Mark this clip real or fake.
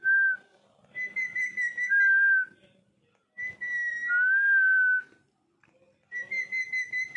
real